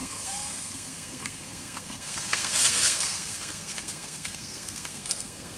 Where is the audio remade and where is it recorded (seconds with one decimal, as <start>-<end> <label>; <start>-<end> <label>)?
0.0-5.6 remade